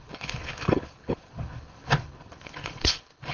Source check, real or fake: fake